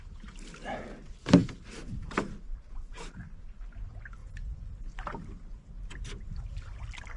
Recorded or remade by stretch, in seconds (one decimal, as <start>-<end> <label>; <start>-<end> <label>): 0.0-4.2 recorded; 4.2-4.7 remade; 4.7-7.2 recorded